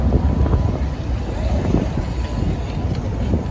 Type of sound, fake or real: real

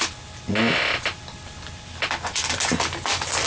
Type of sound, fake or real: real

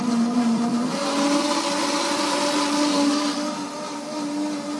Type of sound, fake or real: real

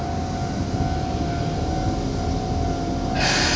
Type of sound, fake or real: real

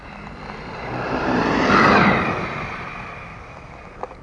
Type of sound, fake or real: fake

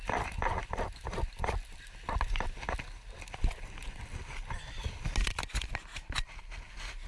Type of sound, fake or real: real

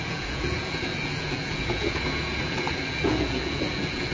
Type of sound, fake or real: fake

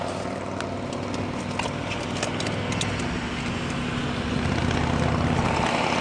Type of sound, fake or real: real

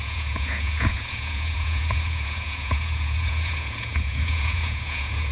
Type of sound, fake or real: fake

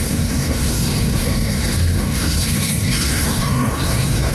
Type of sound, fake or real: fake